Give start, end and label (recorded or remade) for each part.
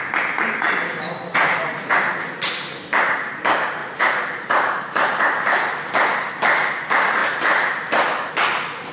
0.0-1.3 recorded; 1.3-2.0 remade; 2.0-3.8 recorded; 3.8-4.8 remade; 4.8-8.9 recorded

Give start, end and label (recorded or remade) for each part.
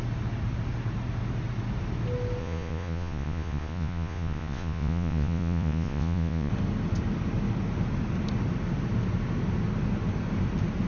0.0-2.4 recorded; 2.4-6.5 remade; 6.5-10.9 recorded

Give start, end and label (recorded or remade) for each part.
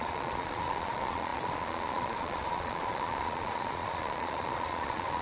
0.0-5.2 remade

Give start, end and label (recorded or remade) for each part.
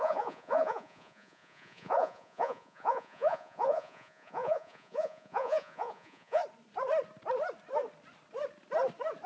0.0-6.4 remade; 6.4-9.3 recorded